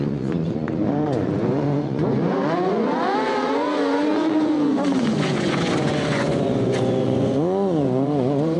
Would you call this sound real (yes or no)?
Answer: no